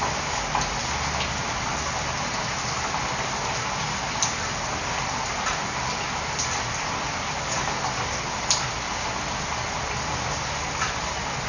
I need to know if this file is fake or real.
real